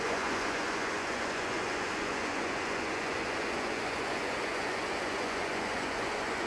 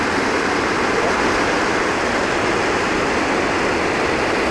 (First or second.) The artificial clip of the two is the first